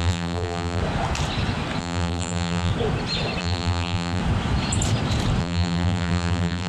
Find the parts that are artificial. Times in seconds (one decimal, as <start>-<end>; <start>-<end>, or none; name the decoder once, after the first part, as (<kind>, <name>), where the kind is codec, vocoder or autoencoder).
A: 0.0-0.8 (vocoder, BigVGAN v2); 1.8-2.7; 3.4-4.2; 5.4-6.7